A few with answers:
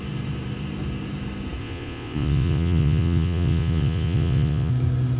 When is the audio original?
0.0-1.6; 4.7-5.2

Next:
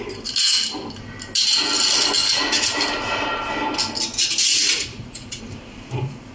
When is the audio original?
0.0-2.2; 2.7-4.5; 5.4-6.3

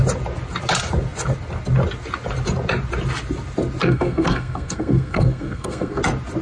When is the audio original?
0.0-3.8; 6.0-6.4

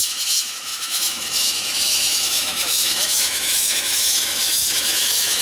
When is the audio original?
none

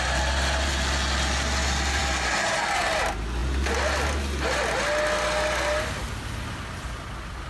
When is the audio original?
0.0-7.5

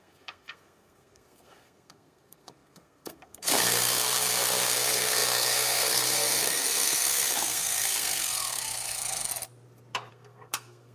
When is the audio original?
9.3-10.1

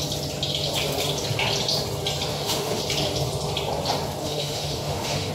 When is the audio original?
0.0-2.3; 2.8-4.2

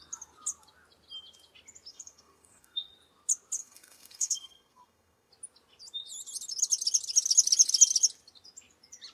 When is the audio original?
0.0-1.9; 2.9-3.6; 5.3-9.1